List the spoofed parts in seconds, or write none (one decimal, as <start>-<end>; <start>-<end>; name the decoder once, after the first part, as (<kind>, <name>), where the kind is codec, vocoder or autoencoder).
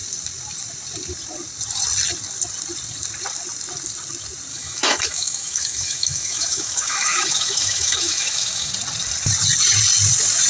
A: 4.5-8.7 (autoencoder, DAC-VAE)